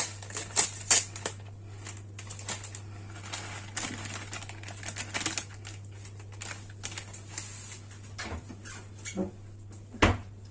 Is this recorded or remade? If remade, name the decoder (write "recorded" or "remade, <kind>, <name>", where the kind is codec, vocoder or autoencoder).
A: recorded